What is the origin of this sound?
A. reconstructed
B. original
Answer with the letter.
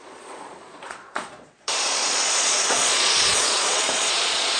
A